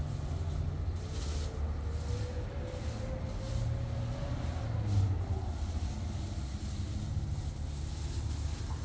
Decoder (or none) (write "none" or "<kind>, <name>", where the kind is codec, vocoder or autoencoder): none